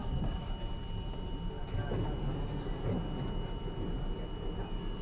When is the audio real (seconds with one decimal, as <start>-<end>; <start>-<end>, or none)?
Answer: 0.5-5.0